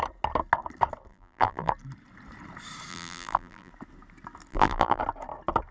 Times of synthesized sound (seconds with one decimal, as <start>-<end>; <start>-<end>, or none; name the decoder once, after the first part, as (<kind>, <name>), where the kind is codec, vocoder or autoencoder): 1.1-1.7 (vocoder, BigVGAN v2); 2.9-3.7; 4.5-5.0